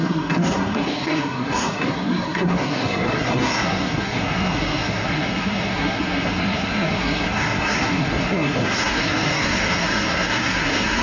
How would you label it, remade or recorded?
remade